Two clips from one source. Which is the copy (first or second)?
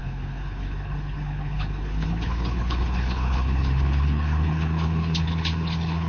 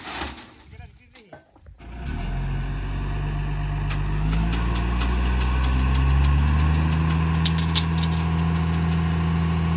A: first